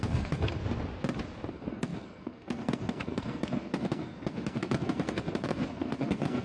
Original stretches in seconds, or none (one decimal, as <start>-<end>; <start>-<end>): 0.6-1.5